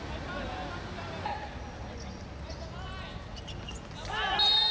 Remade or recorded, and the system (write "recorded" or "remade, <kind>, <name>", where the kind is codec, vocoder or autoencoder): recorded